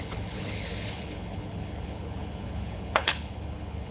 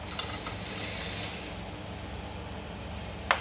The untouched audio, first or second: second